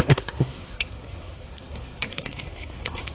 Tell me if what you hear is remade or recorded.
remade